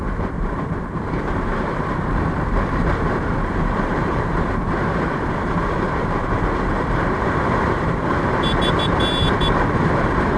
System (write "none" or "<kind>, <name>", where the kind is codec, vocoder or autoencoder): vocoder, BigVGAN v2